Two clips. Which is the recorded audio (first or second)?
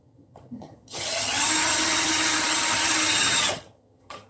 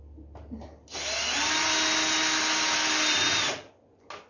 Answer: second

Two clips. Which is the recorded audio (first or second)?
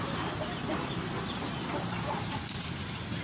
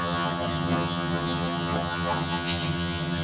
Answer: first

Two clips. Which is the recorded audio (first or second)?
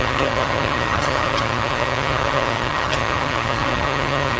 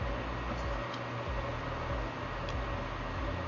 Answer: second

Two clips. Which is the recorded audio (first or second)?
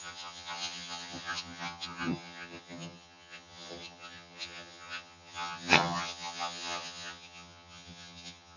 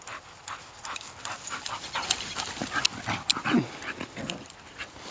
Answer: second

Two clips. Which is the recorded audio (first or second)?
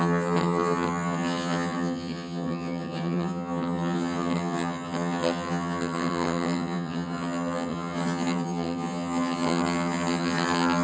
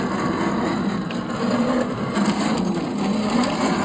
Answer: second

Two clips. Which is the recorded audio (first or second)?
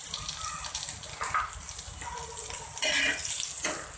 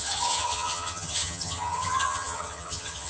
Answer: first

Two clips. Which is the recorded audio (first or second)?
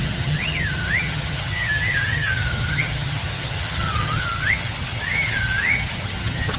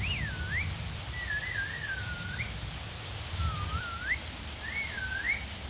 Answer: second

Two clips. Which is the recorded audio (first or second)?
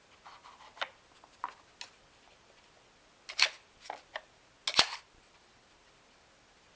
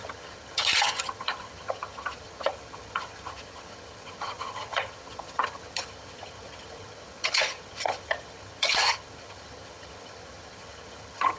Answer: first